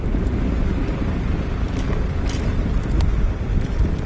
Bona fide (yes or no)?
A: yes